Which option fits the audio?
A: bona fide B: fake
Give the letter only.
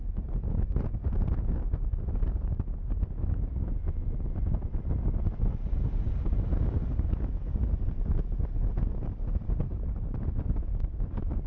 A